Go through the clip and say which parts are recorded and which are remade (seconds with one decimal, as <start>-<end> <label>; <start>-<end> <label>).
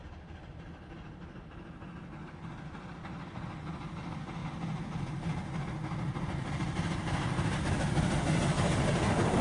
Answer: 0.0-9.4 recorded